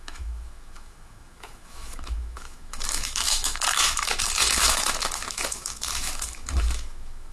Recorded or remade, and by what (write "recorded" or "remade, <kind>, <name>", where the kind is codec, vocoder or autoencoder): remade, autoencoder, DAC-VAE